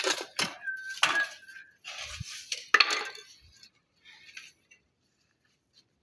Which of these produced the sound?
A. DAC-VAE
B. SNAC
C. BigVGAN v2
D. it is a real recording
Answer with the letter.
D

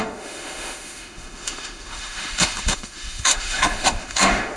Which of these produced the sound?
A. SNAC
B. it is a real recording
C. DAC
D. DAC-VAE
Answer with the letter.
D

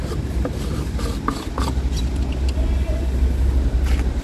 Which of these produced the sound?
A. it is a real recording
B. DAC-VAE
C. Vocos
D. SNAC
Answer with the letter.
A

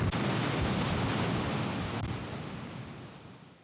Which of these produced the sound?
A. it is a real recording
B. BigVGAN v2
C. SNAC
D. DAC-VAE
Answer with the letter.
A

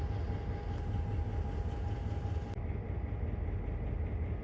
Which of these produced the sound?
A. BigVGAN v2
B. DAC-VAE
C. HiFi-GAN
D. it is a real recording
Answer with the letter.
D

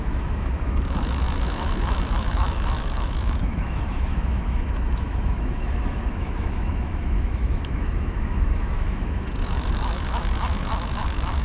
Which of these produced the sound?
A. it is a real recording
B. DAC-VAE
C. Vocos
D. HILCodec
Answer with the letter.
B